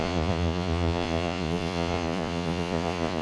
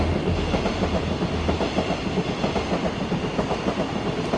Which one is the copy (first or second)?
first